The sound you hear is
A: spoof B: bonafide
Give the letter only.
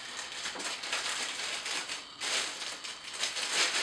B